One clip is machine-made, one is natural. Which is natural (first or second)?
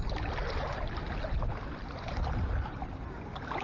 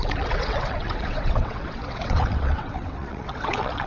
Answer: first